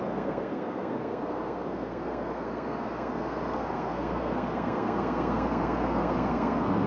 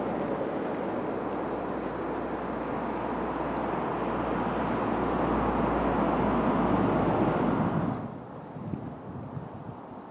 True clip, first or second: second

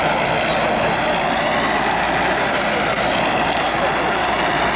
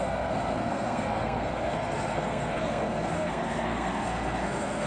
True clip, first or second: first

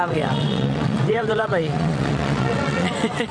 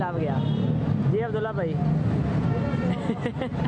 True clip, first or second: second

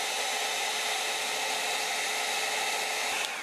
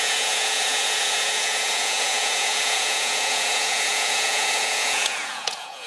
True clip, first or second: first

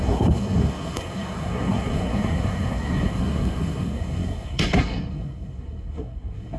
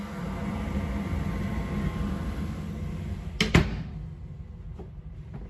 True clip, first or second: second